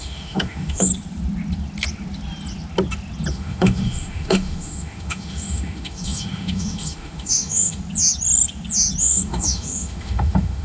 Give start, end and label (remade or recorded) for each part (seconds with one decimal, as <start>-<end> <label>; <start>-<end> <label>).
0.0-0.9 remade; 0.9-3.3 recorded; 3.3-7.8 remade; 7.8-9.0 recorded; 9.0-10.6 remade